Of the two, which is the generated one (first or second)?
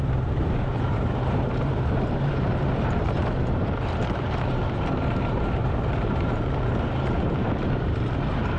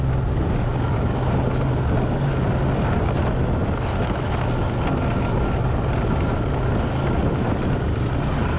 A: first